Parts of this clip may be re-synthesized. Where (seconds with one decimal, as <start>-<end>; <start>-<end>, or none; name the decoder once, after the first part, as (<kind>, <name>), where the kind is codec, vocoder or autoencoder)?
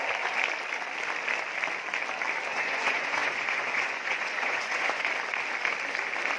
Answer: 2.5-5.1 (vocoder, Vocos)